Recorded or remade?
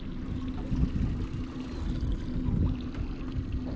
recorded